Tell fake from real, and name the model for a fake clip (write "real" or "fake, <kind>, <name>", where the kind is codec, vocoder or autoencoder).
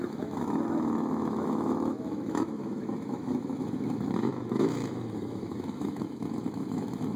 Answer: fake, autoencoder, DAC-VAE